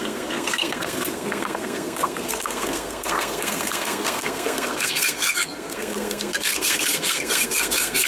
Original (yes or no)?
no